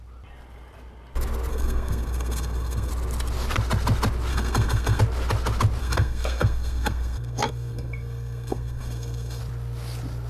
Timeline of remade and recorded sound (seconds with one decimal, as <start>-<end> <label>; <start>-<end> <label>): 0.0-1.5 recorded; 1.5-2.9 remade; 2.9-4.3 recorded; 4.3-5.0 remade; 5.0-5.8 recorded; 5.8-9.4 remade; 9.4-10.3 recorded